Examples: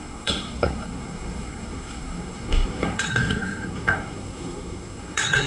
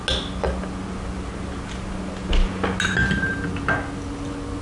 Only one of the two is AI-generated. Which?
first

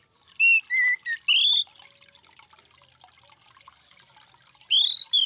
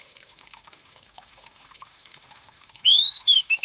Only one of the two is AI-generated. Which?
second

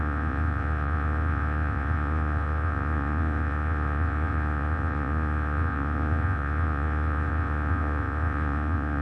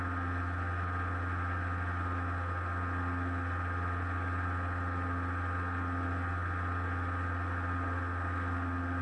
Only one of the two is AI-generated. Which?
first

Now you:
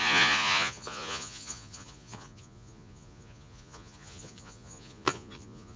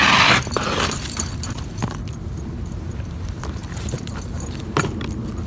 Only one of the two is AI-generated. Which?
first